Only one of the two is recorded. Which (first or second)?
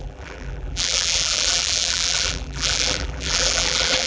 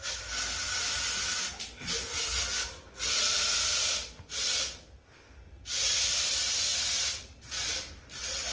second